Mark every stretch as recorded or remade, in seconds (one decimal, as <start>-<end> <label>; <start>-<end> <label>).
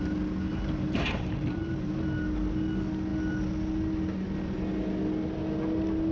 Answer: 0.0-0.5 recorded; 0.5-1.9 remade; 1.9-6.1 recorded